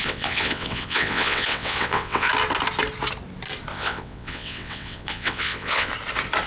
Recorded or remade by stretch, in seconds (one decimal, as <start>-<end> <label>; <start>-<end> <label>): 0.0-2.3 remade; 2.3-3.7 recorded; 3.7-5.9 remade; 5.9-6.5 recorded